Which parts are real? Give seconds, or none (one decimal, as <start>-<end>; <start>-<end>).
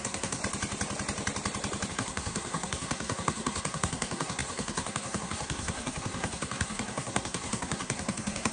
0.4-1.9